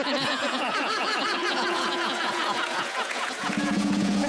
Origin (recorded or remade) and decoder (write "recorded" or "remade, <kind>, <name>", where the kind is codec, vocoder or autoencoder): remade, vocoder, Vocos